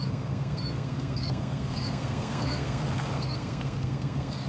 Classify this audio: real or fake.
fake